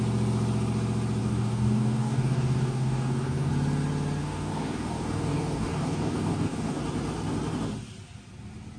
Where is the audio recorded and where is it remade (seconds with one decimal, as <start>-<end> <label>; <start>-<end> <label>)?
0.0-1.2 recorded; 1.2-3.5 remade; 3.5-4.2 recorded; 4.2-6.8 remade; 6.8-8.8 recorded